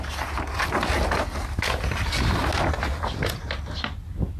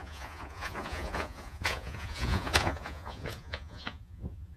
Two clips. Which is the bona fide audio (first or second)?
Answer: first